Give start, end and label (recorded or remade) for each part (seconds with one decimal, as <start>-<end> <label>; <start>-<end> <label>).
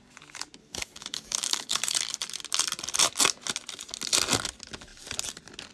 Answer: 0.0-0.6 recorded; 0.6-2.0 remade; 2.0-5.7 recorded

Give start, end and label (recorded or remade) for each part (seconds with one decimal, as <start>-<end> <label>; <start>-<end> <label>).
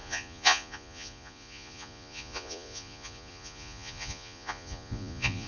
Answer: 0.0-5.5 remade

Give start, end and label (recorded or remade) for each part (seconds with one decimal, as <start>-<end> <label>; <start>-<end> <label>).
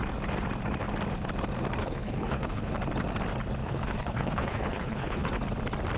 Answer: 0.0-1.8 recorded; 1.8-2.7 remade; 2.7-3.6 recorded; 3.6-5.3 remade; 5.3-6.0 recorded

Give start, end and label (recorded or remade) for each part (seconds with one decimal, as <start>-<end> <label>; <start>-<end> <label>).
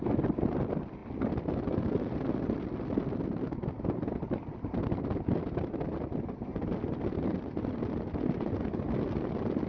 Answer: 0.0-9.7 recorded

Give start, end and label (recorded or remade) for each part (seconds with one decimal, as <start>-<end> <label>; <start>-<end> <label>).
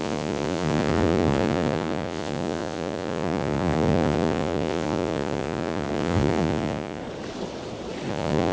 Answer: 0.0-7.0 remade; 7.0-8.1 recorded; 8.1-8.5 remade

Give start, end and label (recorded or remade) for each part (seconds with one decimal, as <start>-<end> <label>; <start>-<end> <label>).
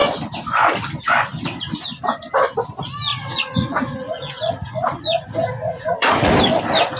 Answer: 0.0-3.1 recorded; 3.1-6.3 remade; 6.3-7.0 recorded